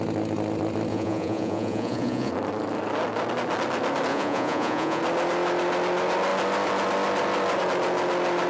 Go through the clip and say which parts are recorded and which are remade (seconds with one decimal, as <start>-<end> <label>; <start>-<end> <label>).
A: 0.0-0.9 recorded; 0.9-2.3 remade; 2.3-4.1 recorded; 4.1-5.0 remade; 5.0-8.5 recorded